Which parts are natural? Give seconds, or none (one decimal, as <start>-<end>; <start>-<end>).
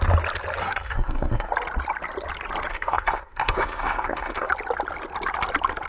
0.0-0.6; 1.5-2.7; 4.5-5.9